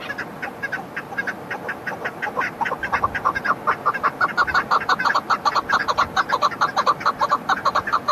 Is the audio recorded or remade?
recorded